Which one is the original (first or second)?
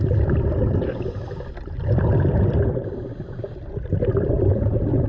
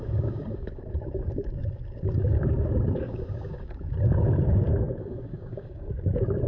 first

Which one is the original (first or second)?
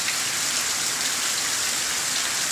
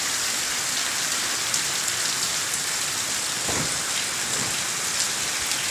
second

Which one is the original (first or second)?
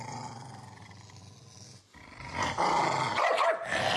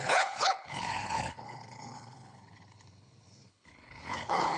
first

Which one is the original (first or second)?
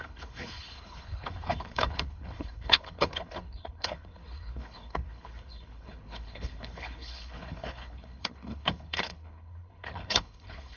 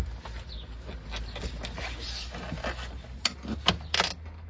second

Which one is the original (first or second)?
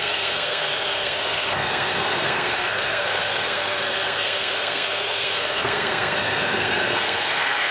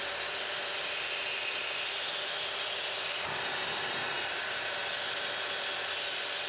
second